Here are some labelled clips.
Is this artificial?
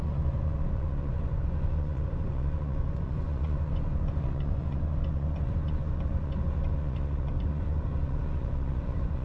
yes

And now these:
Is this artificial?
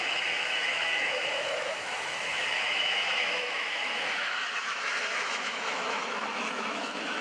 yes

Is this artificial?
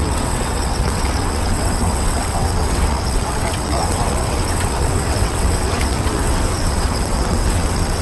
yes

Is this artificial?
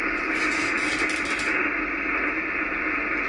no